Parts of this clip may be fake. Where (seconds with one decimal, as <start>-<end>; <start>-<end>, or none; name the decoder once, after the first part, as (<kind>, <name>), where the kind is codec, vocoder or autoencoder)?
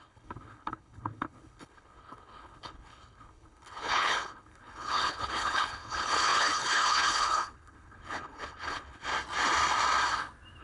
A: 0.0-9.1 (codec, HILCodec)